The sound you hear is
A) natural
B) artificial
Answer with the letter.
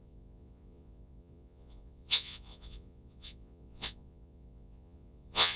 B